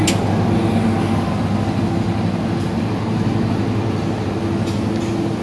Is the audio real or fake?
real